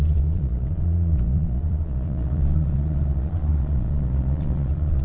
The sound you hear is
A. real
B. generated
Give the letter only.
B